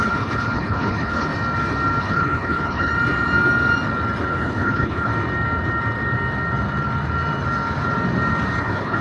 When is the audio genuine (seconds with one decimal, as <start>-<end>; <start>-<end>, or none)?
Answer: 1.3-2.0; 2.9-4.3; 5.1-8.6